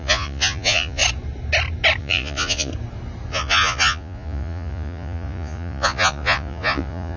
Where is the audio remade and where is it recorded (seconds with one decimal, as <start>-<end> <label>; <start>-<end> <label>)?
0.0-1.0 remade; 1.0-2.0 recorded; 2.0-2.7 remade; 2.7-3.3 recorded; 3.3-7.2 remade